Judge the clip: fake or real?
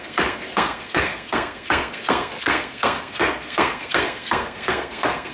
fake